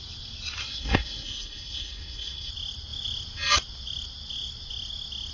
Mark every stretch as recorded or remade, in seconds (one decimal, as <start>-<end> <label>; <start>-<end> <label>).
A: 0.0-0.6 recorded; 0.6-2.5 remade; 2.5-5.3 recorded